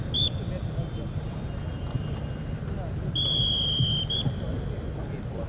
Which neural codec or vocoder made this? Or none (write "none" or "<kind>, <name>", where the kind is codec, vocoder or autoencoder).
none